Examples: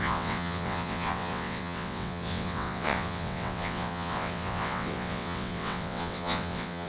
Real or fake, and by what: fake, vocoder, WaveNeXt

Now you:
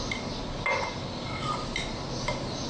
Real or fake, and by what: real